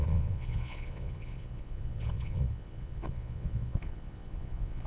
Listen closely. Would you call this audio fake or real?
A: fake